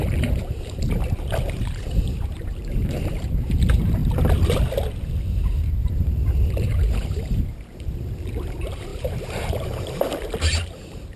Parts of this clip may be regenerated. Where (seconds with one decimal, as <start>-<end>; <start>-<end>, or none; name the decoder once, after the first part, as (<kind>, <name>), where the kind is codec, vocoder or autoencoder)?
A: 0.0-4.0 (vocoder, BigVGAN v2); 5.8-11.2